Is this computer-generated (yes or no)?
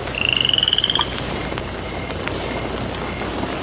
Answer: no